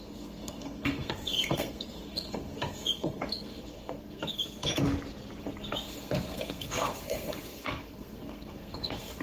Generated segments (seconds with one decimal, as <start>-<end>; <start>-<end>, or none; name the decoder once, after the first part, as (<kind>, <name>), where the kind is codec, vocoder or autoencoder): 0.0-4.7 (codec, SNAC); 5.4-9.2